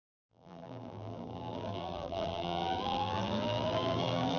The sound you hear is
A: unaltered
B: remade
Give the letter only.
B